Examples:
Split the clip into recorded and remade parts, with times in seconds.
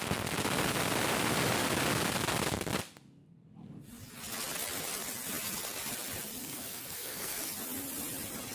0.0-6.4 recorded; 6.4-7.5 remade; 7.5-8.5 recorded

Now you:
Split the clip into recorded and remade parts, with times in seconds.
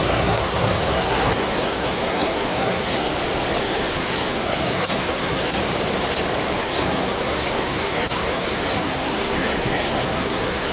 0.0-3.1 remade; 3.1-3.6 recorded; 3.6-5.6 remade; 5.6-6.6 recorded; 6.6-10.7 remade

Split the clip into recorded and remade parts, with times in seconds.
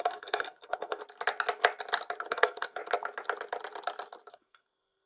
0.0-1.0 remade; 1.0-2.3 recorded; 2.3-2.8 remade; 2.8-4.3 recorded; 4.3-5.1 remade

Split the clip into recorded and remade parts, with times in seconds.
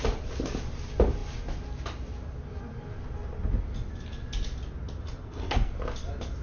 0.0-5.2 recorded; 5.2-5.7 remade; 5.7-6.4 recorded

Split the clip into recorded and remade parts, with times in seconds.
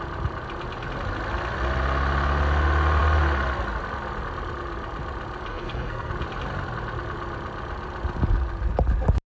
0.0-5.5 recorded; 5.5-6.1 remade; 6.1-9.3 recorded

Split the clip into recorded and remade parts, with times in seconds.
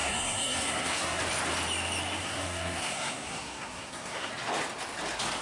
0.0-1.2 remade; 1.2-2.2 recorded; 2.2-4.3 remade; 4.3-5.4 recorded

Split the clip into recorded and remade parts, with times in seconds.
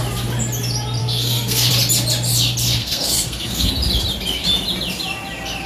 0.0-1.0 recorded; 1.0-1.7 remade; 1.7-2.8 recorded; 2.8-3.7 remade; 3.7-5.7 recorded